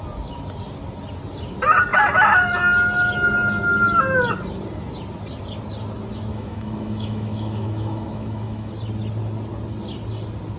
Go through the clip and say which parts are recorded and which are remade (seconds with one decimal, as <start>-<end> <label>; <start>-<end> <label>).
0.0-6.3 recorded; 6.3-8.7 remade; 8.7-10.6 recorded